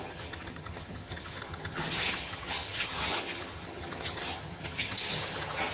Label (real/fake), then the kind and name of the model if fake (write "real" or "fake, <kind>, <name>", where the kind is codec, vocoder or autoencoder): fake, vocoder, HiFi-GAN